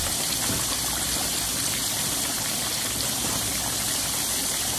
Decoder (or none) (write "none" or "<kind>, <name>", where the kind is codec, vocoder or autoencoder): vocoder, BigVGAN v2